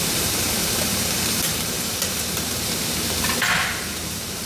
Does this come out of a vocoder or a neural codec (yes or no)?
yes